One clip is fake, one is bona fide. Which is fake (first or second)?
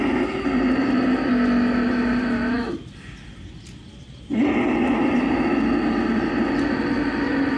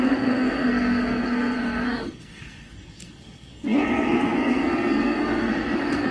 second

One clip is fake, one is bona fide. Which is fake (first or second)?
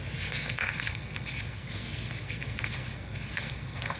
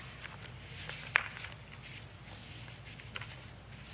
first